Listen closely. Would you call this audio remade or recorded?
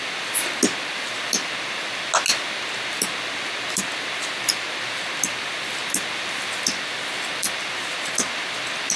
recorded